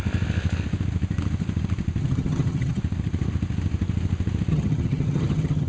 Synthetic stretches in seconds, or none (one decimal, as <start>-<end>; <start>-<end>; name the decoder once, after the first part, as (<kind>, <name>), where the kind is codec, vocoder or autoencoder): 2.0-2.8 (vocoder, HiFi-GAN); 4.5-5.7